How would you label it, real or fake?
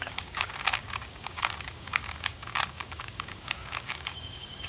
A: fake